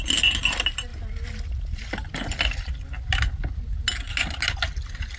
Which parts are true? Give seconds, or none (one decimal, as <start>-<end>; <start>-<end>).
0.0-5.2